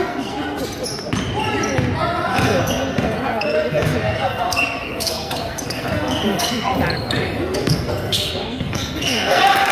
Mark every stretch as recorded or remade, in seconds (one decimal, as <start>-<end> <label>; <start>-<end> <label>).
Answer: 0.0-0.6 remade; 0.6-2.3 recorded; 2.3-6.7 remade; 6.7-7.4 recorded; 7.4-9.7 remade

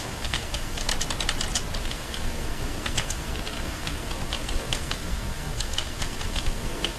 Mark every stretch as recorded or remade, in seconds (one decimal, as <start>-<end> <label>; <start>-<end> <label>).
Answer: 0.0-0.9 remade; 0.9-1.8 recorded; 1.8-7.0 remade

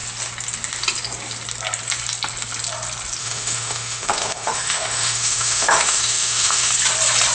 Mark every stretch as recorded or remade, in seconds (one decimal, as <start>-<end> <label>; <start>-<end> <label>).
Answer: 0.0-3.2 recorded; 3.2-6.7 remade; 6.7-7.3 recorded

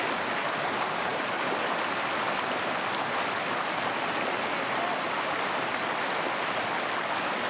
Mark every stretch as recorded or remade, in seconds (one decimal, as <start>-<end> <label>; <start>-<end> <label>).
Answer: 0.0-7.5 recorded

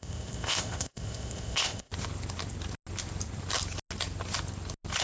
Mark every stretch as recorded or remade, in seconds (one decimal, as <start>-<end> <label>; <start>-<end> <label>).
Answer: 0.0-1.9 remade; 1.9-5.0 recorded

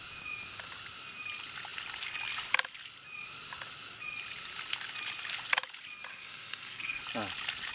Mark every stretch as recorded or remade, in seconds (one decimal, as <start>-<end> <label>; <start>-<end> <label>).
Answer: 0.0-6.1 recorded; 6.1-7.0 remade; 7.0-7.7 recorded